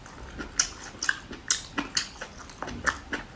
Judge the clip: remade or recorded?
recorded